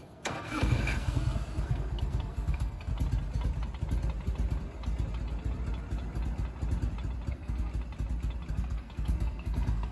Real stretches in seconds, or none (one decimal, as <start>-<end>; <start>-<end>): 2.9-7.3; 7.7-8.5